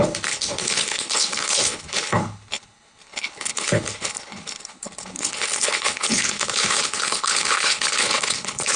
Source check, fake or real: fake